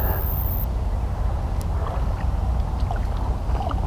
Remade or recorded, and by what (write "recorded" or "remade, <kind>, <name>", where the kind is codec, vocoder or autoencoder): recorded